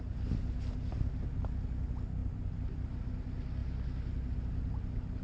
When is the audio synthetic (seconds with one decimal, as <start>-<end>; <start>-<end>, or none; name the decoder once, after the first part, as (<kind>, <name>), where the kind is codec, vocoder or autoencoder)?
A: 2.2-3.0 (vocoder, BigVGAN v2)